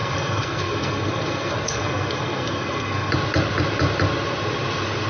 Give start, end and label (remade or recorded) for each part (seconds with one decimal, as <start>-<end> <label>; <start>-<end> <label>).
0.0-3.1 remade; 3.1-5.1 recorded